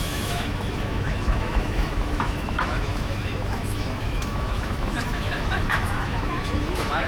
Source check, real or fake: fake